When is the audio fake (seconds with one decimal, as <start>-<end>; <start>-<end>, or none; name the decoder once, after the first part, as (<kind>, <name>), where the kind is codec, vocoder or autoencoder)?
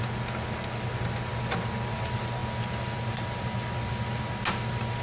none